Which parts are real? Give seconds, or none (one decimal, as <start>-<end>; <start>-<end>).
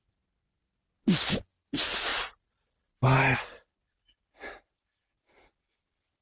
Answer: 0.0-6.2